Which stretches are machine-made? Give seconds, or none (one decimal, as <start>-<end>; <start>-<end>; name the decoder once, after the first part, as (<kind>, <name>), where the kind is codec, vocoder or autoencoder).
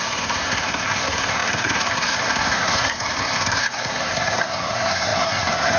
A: 0.0-5.8 (codec, SNAC)